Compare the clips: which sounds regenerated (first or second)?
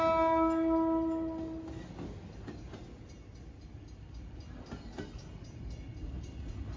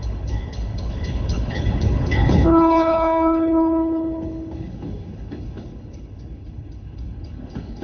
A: second